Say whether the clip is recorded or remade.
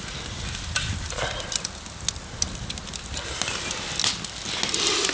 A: recorded